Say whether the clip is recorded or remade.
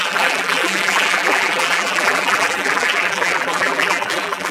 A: remade